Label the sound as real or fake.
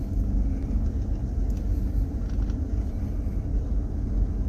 real